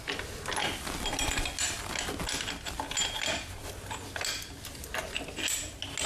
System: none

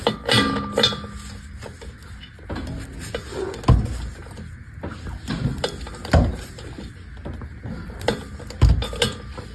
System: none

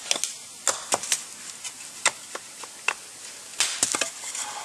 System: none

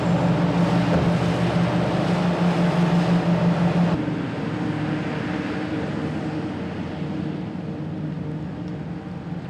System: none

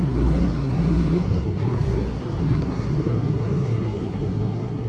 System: codec, SNAC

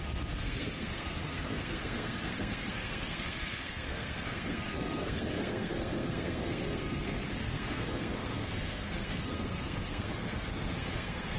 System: codec, SNAC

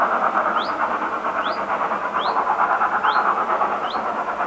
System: none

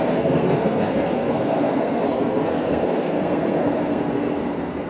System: codec, SNAC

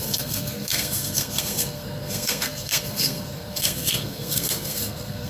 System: codec, SNAC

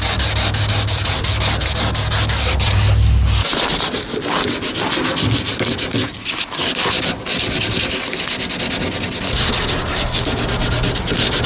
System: none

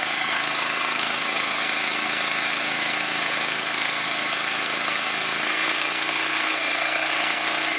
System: codec, SNAC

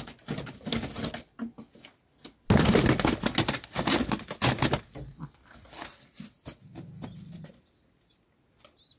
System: none